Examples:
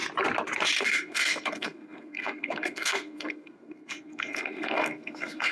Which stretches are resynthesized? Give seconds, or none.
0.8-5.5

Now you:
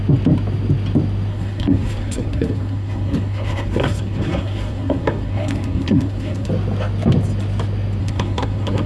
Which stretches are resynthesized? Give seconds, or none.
1.3-6.5; 8.0-8.9

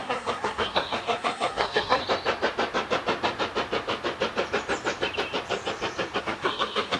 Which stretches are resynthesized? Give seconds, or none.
0.0-2.0; 6.2-7.0

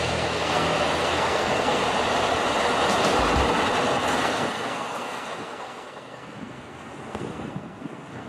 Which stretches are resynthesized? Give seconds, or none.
0.0-1.8; 4.0-8.3